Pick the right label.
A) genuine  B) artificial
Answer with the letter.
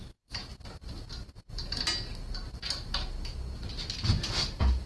A